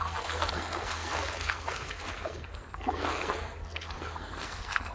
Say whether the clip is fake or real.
fake